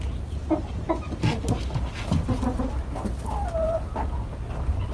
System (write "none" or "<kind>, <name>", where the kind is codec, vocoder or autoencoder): none